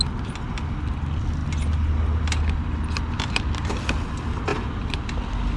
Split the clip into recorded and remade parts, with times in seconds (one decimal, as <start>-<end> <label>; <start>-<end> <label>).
0.0-5.6 recorded